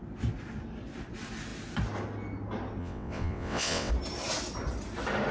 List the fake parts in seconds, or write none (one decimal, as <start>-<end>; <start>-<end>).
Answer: 2.8-3.9

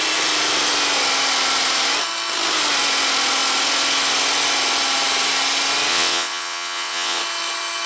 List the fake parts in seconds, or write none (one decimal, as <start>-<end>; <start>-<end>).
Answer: 5.9-7.2